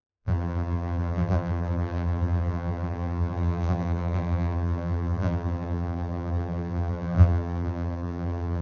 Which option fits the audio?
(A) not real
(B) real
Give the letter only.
A